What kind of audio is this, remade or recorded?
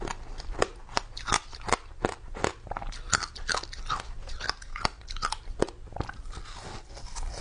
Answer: recorded